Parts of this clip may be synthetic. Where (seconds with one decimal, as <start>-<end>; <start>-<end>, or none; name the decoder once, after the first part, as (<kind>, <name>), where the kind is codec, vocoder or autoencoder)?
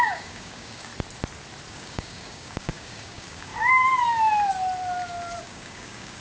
0.0-0.9 (codec, DAC); 1.7-3.5; 5.4-6.2